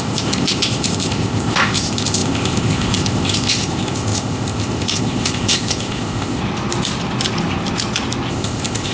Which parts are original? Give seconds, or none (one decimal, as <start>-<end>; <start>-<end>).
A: 6.4-8.3